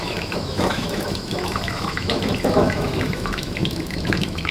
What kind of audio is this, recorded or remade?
remade